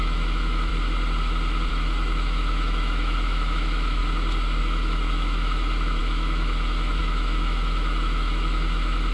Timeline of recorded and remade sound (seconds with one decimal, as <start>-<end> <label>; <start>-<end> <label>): 0.0-0.7 remade; 0.7-1.7 recorded; 1.7-4.0 remade; 4.0-4.6 recorded; 4.6-9.1 remade